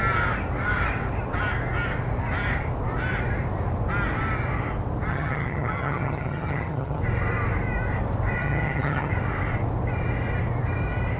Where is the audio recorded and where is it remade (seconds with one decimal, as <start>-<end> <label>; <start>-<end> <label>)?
0.0-5.1 recorded; 5.1-7.0 remade; 7.0-8.4 recorded; 8.4-9.1 remade; 9.1-11.2 recorded